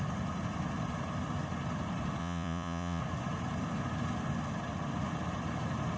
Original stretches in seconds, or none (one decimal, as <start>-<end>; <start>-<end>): 0.0-2.2; 3.0-6.0